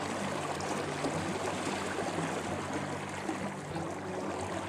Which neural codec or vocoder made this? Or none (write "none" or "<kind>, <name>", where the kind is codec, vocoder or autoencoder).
none